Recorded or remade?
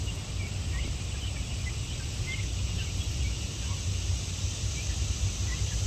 recorded